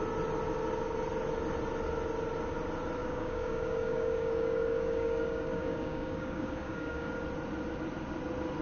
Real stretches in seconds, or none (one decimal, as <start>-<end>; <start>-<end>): 0.0-3.0; 7.1-8.6